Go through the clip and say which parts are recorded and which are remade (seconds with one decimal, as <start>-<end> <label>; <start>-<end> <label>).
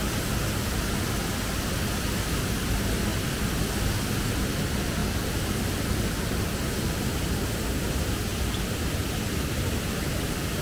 0.0-10.6 recorded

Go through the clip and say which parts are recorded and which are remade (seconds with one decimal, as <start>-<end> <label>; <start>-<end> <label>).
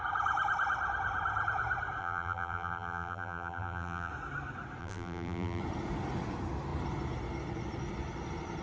0.0-2.0 recorded; 2.0-4.1 remade; 4.1-4.8 recorded; 4.8-5.6 remade; 5.6-8.6 recorded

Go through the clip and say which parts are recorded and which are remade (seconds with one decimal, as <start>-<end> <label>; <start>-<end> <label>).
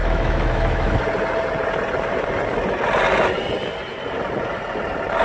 0.0-1.0 remade; 1.0-5.2 recorded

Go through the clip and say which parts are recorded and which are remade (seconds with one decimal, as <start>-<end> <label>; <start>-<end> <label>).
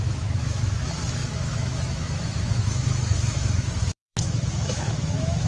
0.0-5.5 remade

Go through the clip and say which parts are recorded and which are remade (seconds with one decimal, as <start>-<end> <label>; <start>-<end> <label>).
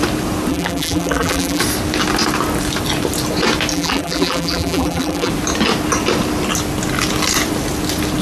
0.0-0.5 recorded; 0.5-1.6 remade; 1.6-3.7 recorded; 3.7-5.3 remade; 5.3-8.2 recorded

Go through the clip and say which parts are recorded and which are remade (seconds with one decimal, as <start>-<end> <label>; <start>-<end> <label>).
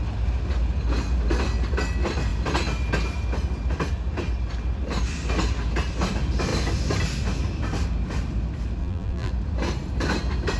0.0-8.8 recorded; 8.8-9.3 remade; 9.3-10.6 recorded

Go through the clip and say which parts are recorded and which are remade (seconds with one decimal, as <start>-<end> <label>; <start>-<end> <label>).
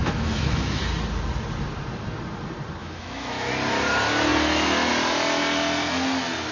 0.0-0.8 remade; 0.8-2.8 recorded; 2.8-3.5 remade; 3.5-6.5 recorded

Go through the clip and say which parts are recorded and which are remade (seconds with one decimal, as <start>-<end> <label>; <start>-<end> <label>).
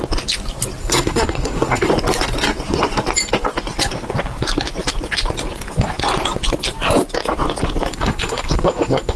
0.0-0.8 recorded; 0.8-1.9 remade; 1.9-7.9 recorded; 7.9-9.2 remade